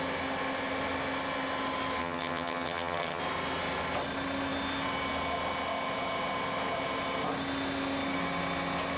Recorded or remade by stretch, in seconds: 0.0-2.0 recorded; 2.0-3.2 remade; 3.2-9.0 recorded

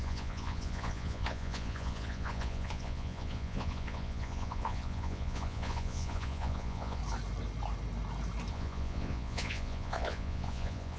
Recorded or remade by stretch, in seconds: 0.0-7.0 remade; 7.0-8.5 recorded; 8.5-11.0 remade

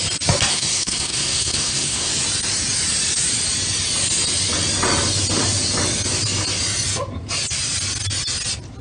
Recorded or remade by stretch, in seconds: 0.0-0.5 recorded; 0.5-2.1 remade; 2.1-8.8 recorded